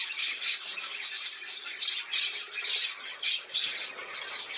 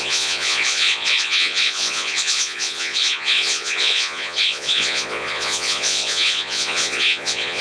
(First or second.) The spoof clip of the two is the second